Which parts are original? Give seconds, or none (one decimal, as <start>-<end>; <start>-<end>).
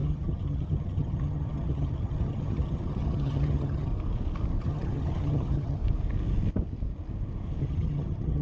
3.9-4.6; 5.8-7.6